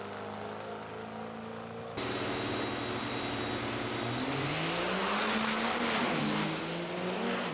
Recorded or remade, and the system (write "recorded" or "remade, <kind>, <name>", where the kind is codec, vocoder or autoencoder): recorded